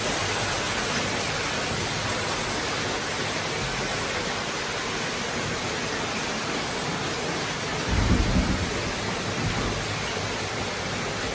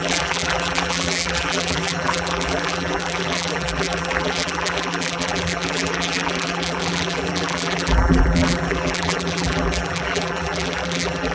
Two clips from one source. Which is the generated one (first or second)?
second